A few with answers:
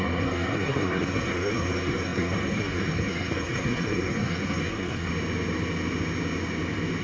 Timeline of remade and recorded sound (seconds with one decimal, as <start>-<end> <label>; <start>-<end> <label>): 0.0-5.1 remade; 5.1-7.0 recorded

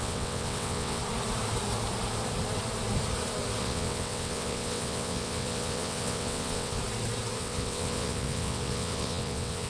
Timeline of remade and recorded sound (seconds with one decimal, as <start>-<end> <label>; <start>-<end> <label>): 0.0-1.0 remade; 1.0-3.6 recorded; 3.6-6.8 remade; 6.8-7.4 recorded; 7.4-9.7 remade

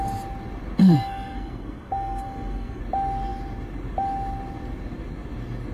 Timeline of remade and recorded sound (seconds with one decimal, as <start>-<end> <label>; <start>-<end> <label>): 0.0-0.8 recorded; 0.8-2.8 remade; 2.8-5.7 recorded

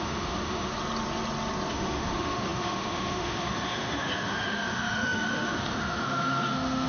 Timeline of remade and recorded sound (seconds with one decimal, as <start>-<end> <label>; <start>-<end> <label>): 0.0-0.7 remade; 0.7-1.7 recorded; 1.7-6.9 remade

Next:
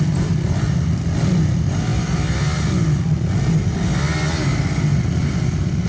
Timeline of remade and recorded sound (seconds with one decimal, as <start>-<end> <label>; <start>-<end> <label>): 0.0-5.9 recorded

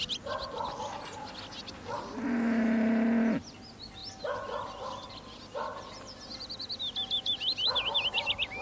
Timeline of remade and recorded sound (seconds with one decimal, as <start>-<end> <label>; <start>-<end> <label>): 0.0-5.7 recorded; 5.7-7.7 remade; 7.7-8.6 recorded

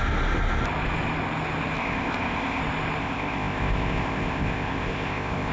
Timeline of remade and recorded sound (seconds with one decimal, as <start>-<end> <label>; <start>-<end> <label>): 0.0-1.8 recorded; 1.8-2.6 remade; 2.6-3.0 recorded; 3.0-5.5 remade